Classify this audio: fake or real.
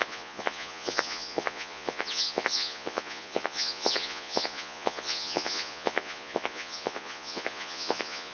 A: fake